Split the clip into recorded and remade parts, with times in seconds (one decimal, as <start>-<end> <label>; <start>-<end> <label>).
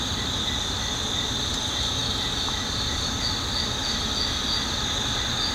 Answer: 0.0-5.5 recorded